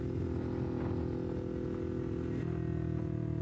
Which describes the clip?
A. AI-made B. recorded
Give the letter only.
B